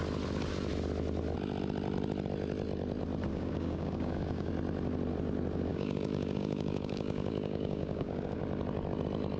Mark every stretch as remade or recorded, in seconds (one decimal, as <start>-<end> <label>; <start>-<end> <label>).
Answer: 0.0-3.3 recorded; 3.3-4.5 remade; 4.5-5.7 recorded; 5.7-8.4 remade; 8.4-9.4 recorded